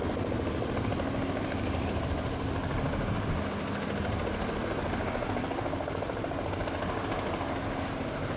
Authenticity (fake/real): real